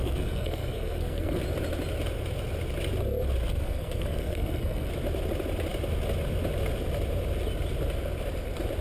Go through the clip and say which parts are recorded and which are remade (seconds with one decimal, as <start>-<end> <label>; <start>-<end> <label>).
0.0-1.4 remade; 1.4-3.5 recorded; 3.5-4.9 remade; 4.9-8.8 recorded